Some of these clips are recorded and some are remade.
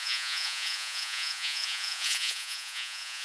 remade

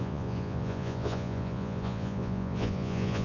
remade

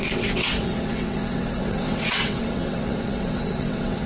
remade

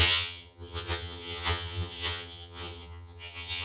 remade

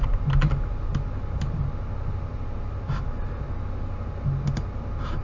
recorded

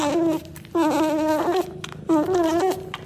recorded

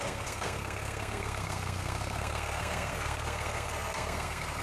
remade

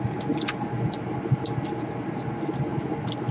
recorded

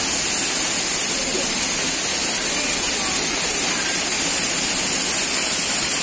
recorded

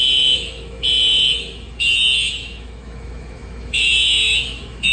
remade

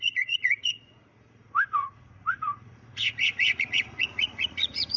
remade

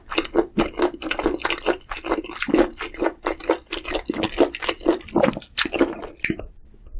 recorded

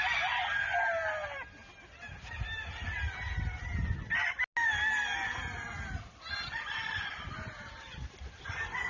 recorded